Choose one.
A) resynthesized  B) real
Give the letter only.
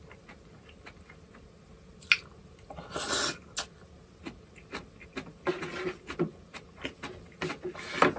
B